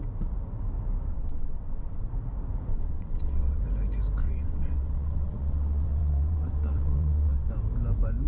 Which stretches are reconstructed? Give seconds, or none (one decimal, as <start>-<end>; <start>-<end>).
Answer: 1.1-2.1; 2.7-3.6; 4.2-7.5